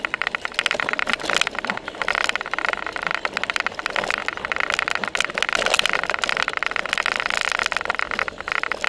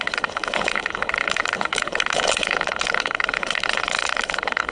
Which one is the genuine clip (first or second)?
first